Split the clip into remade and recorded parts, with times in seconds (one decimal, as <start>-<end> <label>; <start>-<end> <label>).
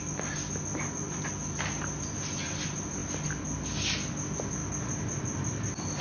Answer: 0.0-6.0 recorded